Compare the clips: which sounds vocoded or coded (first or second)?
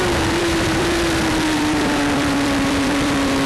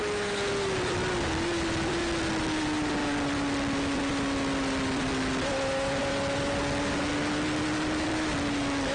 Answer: first